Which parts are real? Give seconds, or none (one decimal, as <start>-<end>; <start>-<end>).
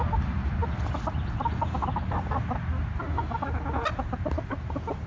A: 0.0-5.1